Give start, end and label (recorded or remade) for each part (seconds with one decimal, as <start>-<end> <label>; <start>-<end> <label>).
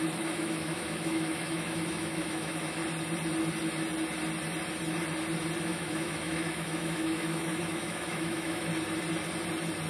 0.0-2.8 remade; 2.8-5.6 recorded; 5.6-8.7 remade; 8.7-9.9 recorded